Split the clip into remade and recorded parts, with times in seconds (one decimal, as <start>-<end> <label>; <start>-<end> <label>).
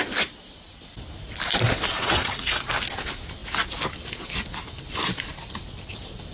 0.0-2.0 recorded; 2.0-2.6 remade; 2.6-6.3 recorded